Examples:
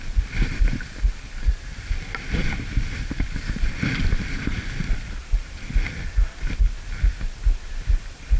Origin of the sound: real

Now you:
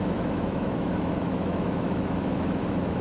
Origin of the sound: fake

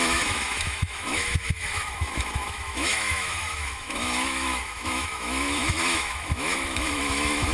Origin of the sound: fake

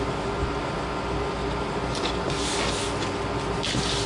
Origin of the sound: real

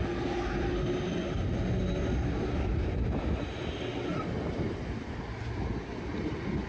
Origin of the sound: real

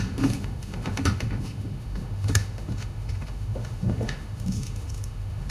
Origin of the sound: fake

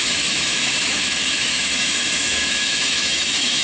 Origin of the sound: fake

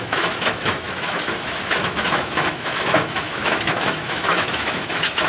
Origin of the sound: fake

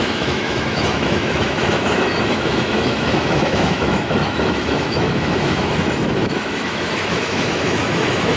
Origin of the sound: fake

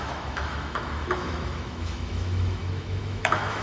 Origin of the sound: fake